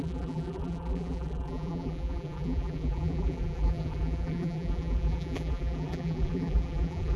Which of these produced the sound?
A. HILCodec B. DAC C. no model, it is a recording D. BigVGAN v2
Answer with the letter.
D